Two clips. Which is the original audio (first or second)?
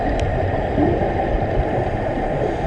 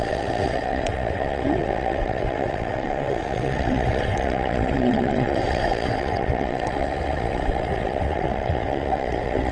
first